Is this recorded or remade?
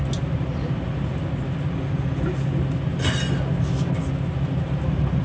recorded